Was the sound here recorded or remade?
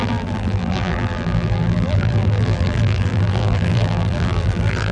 remade